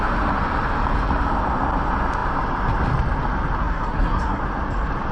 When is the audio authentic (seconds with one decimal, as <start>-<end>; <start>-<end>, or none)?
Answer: 0.0-3.6; 4.4-5.1